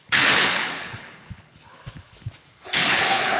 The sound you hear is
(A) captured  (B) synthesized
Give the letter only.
B